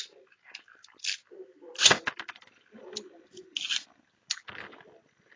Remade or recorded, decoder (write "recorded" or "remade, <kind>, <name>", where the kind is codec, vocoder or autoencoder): recorded